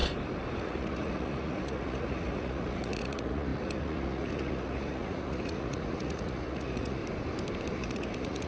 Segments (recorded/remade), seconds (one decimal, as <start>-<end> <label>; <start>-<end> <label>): 0.0-0.6 recorded; 0.6-7.0 remade; 7.0-7.7 recorded; 7.7-8.5 remade